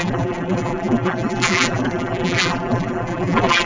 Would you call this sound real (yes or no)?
no